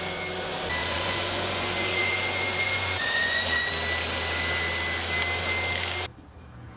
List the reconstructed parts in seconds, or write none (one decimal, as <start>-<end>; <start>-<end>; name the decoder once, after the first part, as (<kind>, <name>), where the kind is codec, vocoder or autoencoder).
0.8-3.7 (vocoder, Vocos)